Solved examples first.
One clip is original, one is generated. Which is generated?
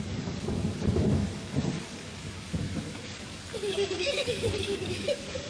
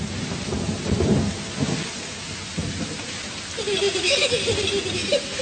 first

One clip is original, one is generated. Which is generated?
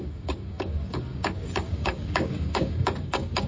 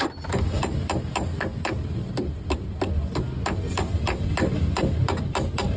first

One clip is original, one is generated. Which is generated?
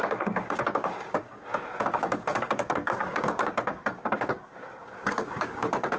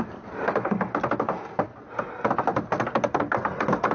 first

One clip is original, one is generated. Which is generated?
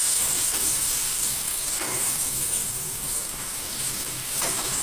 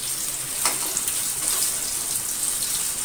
first